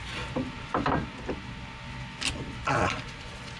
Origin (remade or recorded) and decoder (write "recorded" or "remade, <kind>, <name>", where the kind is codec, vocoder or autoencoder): recorded